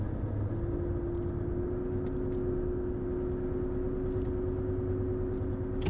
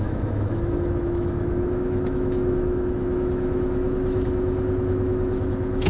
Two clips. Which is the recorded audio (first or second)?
first